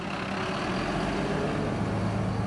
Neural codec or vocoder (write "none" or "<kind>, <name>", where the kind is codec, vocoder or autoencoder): none